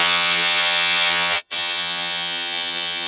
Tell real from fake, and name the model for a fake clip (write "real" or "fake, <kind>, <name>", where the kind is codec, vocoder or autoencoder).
fake, vocoder, HiFi-GAN